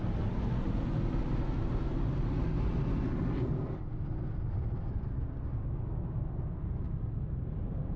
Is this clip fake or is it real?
real